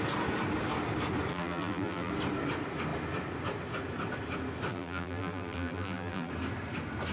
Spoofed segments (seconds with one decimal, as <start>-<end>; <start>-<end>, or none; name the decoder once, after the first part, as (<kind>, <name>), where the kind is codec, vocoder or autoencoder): 1.3-2.1 (vocoder, BigVGAN v2); 4.7-6.3

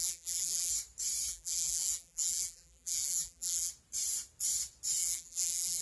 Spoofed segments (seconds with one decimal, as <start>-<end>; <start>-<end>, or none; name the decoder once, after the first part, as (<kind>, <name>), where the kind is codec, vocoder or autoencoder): 0.0-0.7 (vocoder, BigVGAN v2); 1.3-3.7; 5.0-5.8